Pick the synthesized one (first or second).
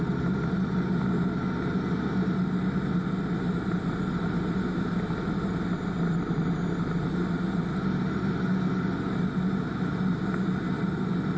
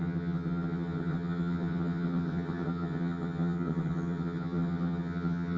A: second